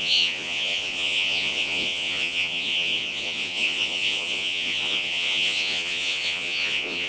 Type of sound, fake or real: fake